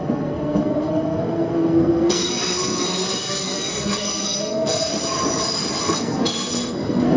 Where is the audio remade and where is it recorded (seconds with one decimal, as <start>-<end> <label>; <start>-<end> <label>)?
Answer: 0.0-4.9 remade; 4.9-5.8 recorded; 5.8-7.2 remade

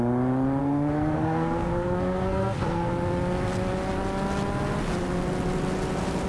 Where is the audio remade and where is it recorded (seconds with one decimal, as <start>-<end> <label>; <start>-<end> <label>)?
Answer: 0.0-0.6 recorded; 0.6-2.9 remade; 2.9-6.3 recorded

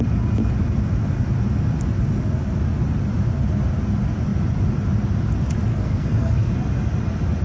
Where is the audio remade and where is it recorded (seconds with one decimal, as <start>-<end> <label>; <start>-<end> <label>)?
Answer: 0.0-5.7 recorded; 5.7-6.5 remade; 6.5-7.4 recorded